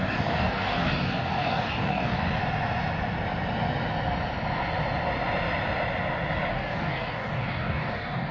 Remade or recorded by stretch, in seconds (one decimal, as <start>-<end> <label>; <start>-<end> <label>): 0.0-2.4 remade; 2.4-6.5 recorded; 6.5-8.3 remade